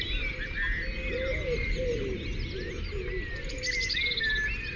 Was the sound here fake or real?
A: real